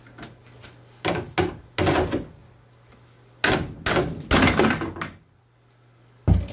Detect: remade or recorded recorded